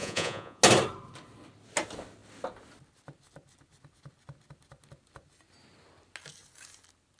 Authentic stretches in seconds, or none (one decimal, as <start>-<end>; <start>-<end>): 0.6-7.2